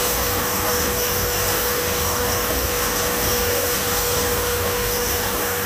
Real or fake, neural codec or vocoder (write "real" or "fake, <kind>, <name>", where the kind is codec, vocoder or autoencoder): fake, codec, DAC